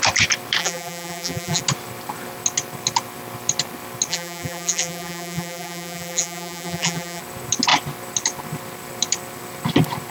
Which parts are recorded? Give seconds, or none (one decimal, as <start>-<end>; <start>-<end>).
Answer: 0.0-0.6; 1.6-4.1; 7.2-10.1